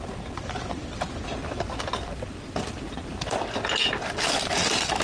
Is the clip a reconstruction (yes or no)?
no